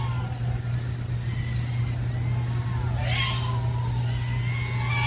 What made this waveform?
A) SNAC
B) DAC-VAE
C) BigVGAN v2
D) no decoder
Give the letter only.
D